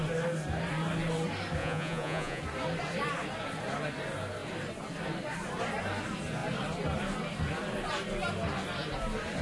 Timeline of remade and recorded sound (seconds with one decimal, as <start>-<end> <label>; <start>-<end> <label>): 0.0-1.6 recorded; 1.6-2.4 remade; 2.4-9.4 recorded

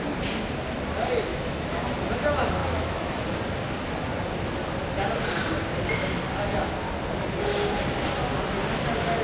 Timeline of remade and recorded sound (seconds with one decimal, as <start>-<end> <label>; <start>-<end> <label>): 0.0-1.3 recorded; 1.3-2.0 remade; 2.0-2.6 recorded; 2.6-3.2 remade; 3.2-9.2 recorded

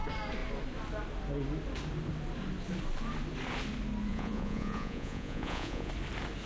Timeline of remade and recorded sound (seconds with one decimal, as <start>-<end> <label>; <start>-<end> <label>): 0.0-4.1 recorded; 4.1-5.9 remade; 5.9-6.5 recorded

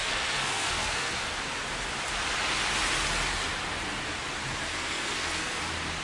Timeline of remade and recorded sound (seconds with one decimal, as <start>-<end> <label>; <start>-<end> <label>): 0.0-1.2 remade; 1.2-4.7 recorded; 4.7-5.6 remade; 5.6-6.0 recorded

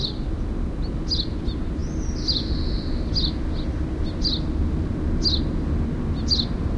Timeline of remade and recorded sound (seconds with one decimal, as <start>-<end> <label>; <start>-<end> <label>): 0.0-6.8 recorded

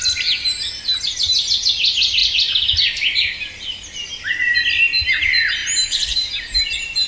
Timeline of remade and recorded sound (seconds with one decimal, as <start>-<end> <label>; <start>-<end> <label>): 0.0-2.2 recorded; 2.2-4.2 remade; 4.2-5.6 recorded; 5.6-7.1 remade

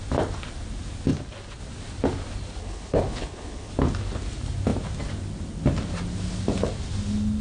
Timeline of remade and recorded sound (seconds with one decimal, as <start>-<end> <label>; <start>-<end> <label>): 0.0-2.6 recorded; 2.6-3.7 remade; 3.7-7.4 recorded

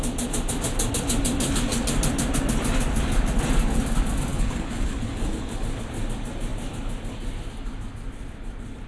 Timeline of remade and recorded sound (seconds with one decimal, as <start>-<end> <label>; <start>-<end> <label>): 0.0-4.3 recorded; 4.3-5.8 remade; 5.8-8.9 recorded